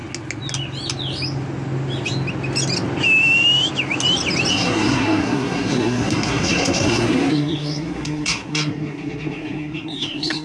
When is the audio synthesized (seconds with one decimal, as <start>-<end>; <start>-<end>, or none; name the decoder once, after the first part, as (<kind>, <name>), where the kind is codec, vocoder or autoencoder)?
4.5-10.4 (codec, SNAC)